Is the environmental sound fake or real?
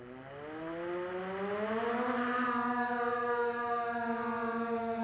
real